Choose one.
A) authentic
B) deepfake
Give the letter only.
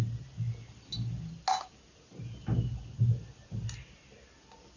A